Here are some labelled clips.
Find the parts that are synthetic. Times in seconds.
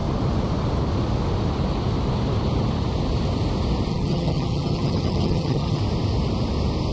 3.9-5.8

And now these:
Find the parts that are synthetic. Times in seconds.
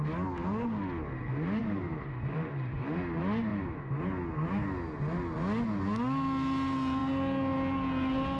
1.6-2.8; 3.5-4.0